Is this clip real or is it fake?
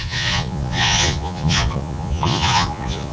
fake